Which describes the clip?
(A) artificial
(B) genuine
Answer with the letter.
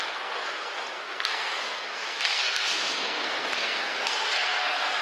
A